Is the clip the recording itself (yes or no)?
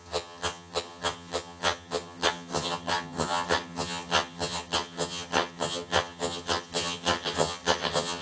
no